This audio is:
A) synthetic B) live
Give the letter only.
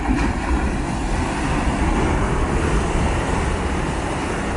B